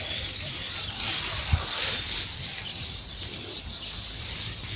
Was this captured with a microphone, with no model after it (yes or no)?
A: yes